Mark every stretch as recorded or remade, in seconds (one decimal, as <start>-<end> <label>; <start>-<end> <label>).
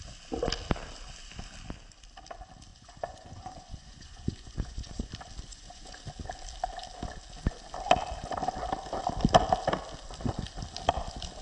0.0-2.7 recorded; 2.7-5.1 remade; 5.1-5.5 recorded; 5.5-6.0 remade; 6.0-11.4 recorded